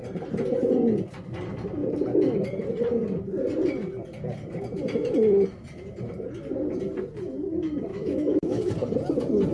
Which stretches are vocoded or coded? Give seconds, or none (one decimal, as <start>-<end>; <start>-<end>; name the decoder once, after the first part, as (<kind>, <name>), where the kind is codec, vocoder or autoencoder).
7.9-8.7 (autoencoder, DAC-VAE)